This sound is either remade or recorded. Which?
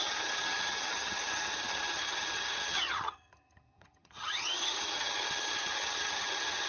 remade